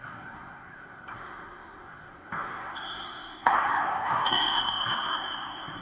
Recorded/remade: remade